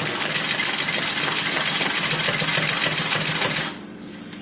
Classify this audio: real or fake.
real